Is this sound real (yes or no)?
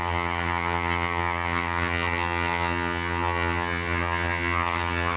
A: no